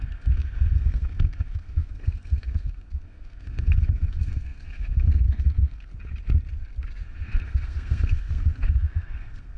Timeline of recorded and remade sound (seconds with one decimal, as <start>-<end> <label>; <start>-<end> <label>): 0.0-5.9 remade; 5.9-7.0 recorded; 7.0-9.6 remade